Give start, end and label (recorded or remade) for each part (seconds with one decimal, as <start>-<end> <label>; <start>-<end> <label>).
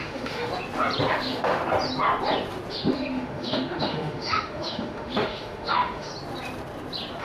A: 0.0-0.5 remade; 0.5-1.1 recorded; 1.1-1.6 remade; 1.6-2.7 recorded; 2.7-6.1 remade; 6.1-7.2 recorded